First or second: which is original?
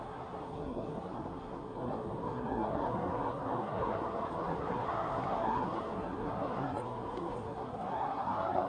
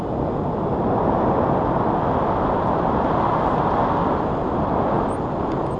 second